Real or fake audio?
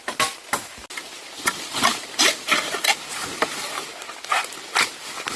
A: real